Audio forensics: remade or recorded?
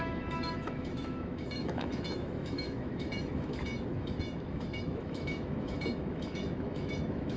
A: remade